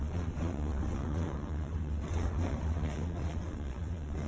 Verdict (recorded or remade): remade